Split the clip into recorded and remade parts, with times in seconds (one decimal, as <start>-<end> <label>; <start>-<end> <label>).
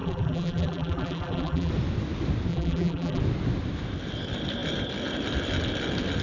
0.0-1.7 remade; 1.7-2.5 recorded; 2.5-3.2 remade; 3.2-6.2 recorded